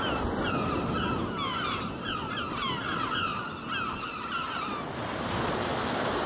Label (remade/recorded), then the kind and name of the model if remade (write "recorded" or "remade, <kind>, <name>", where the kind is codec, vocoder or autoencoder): recorded